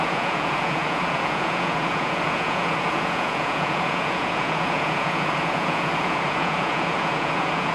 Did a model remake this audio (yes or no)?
yes